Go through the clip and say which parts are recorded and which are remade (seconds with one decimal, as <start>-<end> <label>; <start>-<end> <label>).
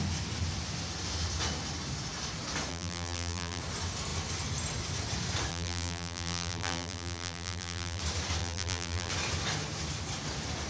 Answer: 0.0-2.7 recorded; 2.7-3.6 remade; 3.6-5.5 recorded; 5.5-8.0 remade; 8.0-8.4 recorded; 8.4-9.1 remade; 9.1-10.7 recorded